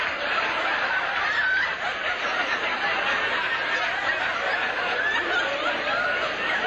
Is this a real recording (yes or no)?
yes